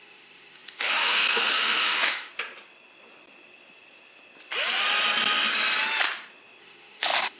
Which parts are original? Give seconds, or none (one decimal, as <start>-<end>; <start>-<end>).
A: 2.3-6.6